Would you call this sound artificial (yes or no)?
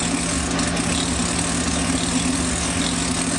no